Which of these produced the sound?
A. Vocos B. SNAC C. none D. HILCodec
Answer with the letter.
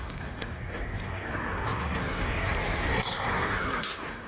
B